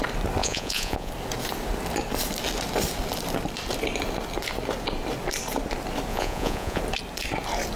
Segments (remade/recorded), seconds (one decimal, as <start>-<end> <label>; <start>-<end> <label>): 0.0-0.4 recorded; 0.4-1.1 remade; 1.1-6.1 recorded; 6.1-6.8 remade; 6.8-7.8 recorded